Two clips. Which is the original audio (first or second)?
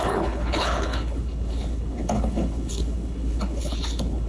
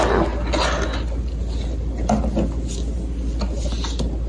second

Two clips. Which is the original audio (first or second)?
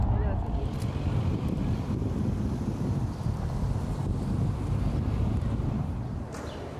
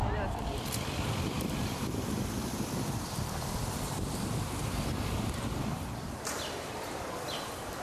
first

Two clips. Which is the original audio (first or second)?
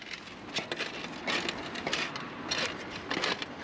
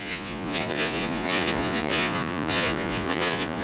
first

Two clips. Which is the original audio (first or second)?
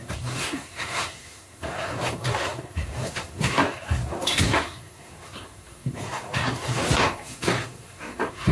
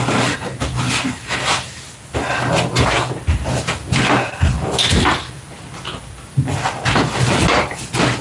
second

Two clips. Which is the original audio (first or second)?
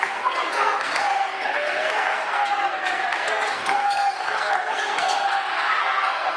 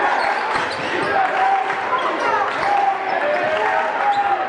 second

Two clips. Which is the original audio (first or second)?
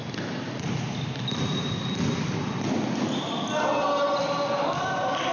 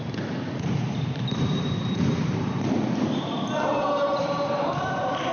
first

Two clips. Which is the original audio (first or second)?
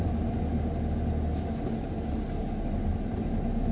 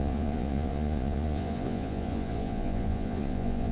first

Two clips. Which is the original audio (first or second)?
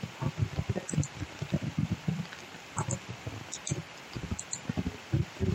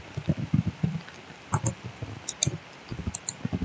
second